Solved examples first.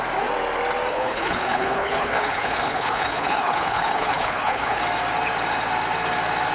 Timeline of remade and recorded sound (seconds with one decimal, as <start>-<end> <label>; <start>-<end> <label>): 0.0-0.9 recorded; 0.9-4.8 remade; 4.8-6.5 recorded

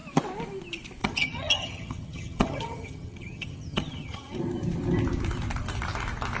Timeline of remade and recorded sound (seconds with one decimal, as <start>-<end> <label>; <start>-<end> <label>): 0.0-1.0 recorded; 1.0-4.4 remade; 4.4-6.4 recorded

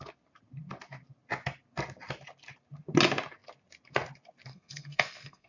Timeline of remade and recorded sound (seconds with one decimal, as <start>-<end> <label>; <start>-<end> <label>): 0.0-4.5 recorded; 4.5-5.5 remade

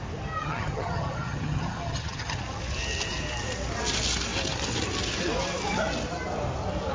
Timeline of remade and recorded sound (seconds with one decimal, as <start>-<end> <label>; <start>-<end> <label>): 0.0-0.4 recorded; 0.4-2.4 remade; 2.4-6.9 recorded

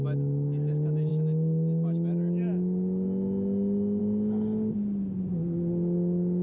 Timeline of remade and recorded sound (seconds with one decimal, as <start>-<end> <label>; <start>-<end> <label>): 0.0-6.4 recorded